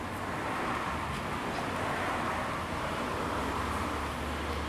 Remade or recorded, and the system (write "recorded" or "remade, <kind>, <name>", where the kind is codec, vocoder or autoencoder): recorded